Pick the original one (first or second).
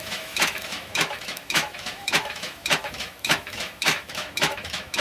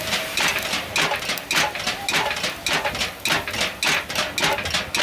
second